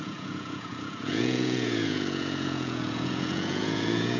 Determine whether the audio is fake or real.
fake